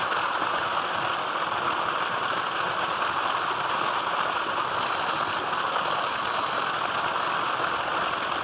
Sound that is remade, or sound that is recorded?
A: recorded